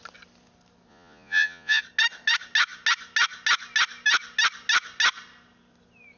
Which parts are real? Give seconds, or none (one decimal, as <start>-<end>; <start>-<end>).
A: 0.0-0.9; 1.8-6.2